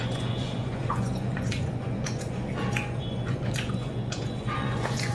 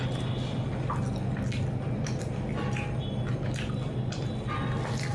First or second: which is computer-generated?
first